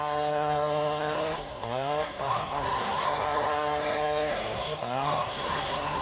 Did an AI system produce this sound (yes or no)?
yes